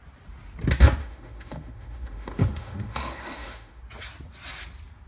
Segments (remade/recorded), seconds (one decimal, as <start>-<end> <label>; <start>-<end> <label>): 0.0-1.0 recorded; 1.0-3.8 remade; 3.8-5.1 recorded